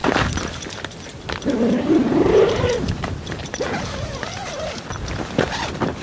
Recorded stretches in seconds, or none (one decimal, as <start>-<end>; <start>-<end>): 3.6-6.0